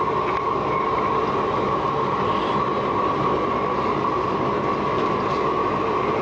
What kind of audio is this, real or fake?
real